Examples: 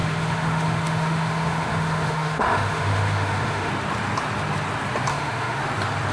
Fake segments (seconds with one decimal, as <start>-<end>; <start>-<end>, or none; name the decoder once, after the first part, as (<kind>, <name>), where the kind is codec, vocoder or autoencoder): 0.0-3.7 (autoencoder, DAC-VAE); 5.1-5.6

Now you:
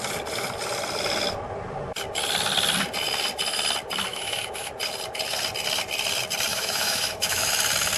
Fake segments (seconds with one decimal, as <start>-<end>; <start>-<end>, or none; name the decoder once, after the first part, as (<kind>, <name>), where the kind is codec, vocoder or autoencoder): 4.1-4.7 (autoencoder, DAC-VAE); 6.5-7.5

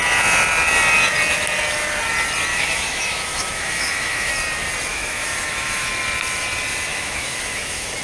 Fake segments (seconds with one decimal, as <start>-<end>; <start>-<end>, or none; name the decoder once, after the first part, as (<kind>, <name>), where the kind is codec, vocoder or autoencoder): 2.5-4.3 (autoencoder, DAC-VAE); 4.9-5.9; 6.9-8.0